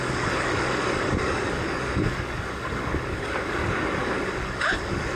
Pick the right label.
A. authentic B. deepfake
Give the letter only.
B